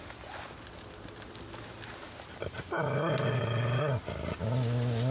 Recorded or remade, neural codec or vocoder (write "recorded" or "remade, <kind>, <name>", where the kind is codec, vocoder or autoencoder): recorded